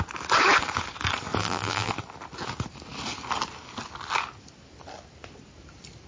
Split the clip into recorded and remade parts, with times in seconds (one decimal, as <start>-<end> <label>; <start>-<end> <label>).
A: 0.0-1.4 recorded; 1.4-1.9 remade; 1.9-6.1 recorded